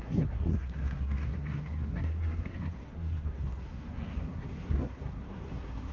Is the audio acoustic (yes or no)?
no